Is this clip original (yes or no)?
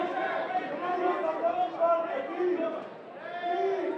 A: yes